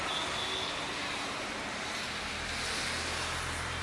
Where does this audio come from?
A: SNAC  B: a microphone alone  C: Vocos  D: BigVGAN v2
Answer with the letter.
B